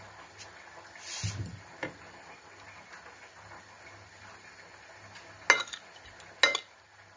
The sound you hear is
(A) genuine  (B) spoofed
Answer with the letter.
A